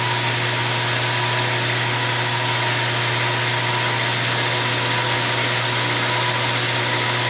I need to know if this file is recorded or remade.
recorded